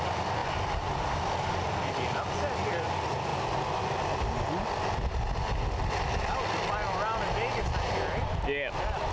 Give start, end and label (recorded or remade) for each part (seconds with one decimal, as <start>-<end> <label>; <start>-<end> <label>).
0.0-9.1 recorded